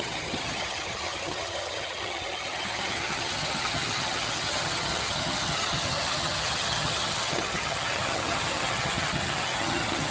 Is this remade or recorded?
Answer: remade